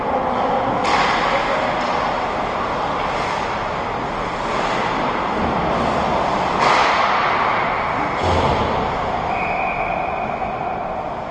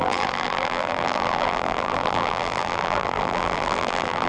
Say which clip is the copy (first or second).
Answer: second